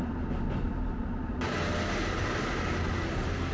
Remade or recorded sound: recorded